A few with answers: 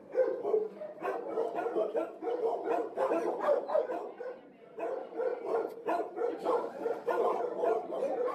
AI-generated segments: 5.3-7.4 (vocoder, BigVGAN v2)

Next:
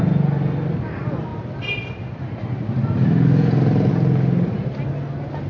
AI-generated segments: none